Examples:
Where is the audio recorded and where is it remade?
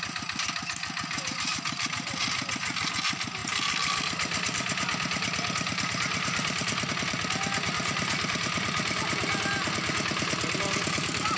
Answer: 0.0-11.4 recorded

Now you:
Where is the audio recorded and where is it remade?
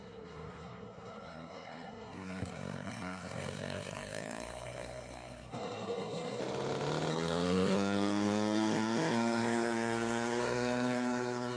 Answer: 0.0-6.4 remade; 6.4-7.1 recorded; 7.1-11.6 remade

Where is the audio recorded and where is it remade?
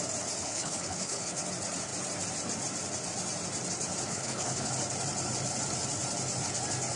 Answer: 0.0-0.4 recorded; 0.4-1.4 remade; 1.4-4.1 recorded; 4.1-4.7 remade; 4.7-7.0 recorded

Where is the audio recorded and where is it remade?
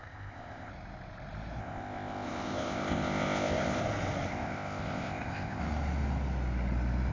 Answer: 0.0-0.7 remade; 0.7-1.6 recorded; 1.6-3.8 remade; 3.8-4.3 recorded; 4.3-5.6 remade; 5.6-7.1 recorded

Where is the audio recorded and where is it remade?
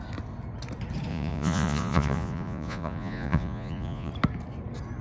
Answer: 0.0-1.1 recorded; 1.1-4.1 remade; 4.1-5.0 recorded